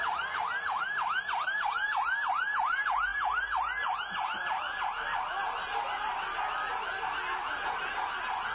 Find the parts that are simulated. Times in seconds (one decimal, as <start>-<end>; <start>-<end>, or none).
none